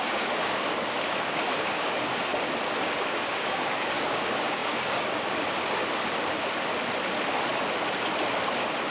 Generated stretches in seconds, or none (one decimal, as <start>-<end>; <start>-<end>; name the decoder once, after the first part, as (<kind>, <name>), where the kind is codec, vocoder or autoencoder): 0.0-2.3 (codec, DAC); 2.8-5.8